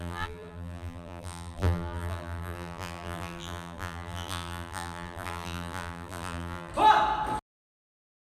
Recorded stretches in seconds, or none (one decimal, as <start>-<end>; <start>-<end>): 6.7-7.9